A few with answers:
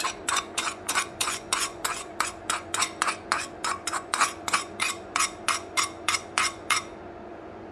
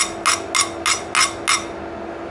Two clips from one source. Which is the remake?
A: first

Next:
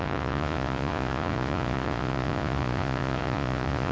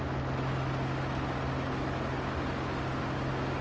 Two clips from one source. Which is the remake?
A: first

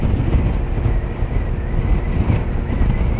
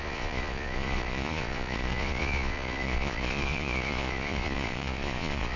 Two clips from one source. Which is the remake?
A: second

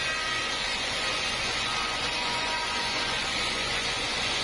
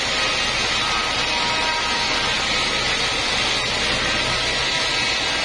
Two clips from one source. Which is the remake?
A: first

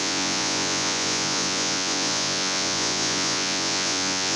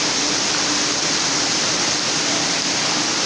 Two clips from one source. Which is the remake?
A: first